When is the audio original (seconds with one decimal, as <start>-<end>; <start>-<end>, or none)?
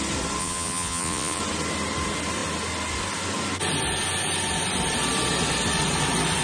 0.0-0.4; 1.4-6.4